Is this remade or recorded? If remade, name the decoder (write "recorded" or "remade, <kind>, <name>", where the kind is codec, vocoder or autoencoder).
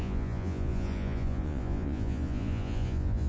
remade, vocoder, Vocos